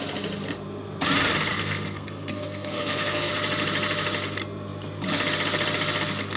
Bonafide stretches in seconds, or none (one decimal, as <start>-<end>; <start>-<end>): 0.0-1.5; 3.3-6.4

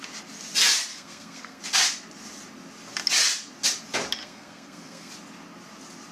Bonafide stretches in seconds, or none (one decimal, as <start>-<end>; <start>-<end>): 0.0-0.9; 1.6-4.2; 5.1-6.1

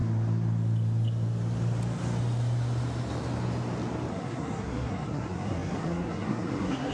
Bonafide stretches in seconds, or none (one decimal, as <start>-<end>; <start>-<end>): 0.0-4.1

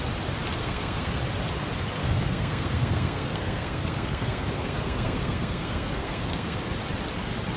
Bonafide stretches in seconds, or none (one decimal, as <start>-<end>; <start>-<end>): 0.0-0.6; 1.2-2.0; 6.6-7.6

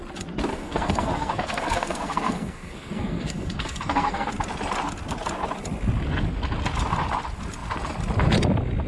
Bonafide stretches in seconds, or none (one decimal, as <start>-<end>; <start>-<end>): 0.0-0.5; 4.3-8.9

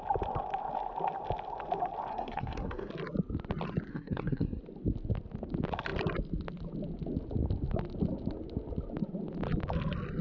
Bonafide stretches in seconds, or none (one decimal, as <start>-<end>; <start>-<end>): 0.0-2.1; 2.9-3.9; 4.6-10.2

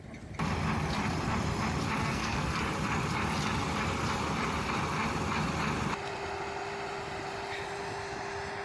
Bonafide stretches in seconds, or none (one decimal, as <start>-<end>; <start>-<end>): 0.0-2.0; 2.6-8.6